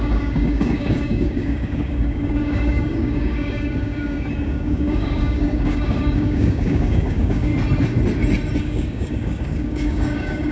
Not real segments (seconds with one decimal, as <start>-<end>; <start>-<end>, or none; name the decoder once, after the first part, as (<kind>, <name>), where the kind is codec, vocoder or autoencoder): 0.0-7.5 (codec, DAC); 8.6-10.5